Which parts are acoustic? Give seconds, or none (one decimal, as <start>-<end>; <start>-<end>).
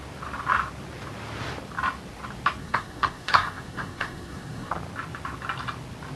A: 0.0-2.6; 4.7-6.2